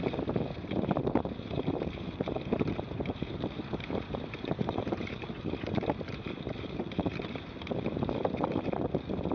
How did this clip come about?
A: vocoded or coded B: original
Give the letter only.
A